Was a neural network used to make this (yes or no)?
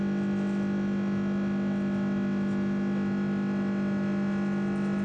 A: no